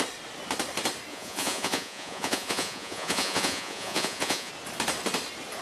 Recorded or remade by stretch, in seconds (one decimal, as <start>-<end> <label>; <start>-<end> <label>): 0.0-1.1 recorded; 1.1-4.5 remade; 4.5-5.6 recorded